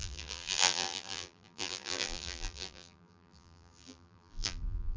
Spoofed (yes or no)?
yes